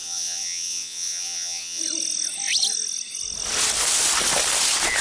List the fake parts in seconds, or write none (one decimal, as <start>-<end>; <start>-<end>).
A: 0.0-1.8